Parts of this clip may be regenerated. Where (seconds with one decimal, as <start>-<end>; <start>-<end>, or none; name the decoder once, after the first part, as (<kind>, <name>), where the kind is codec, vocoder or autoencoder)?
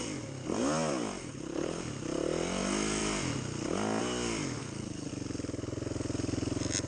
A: 1.2-1.8 (codec, HILCodec); 4.6-5.1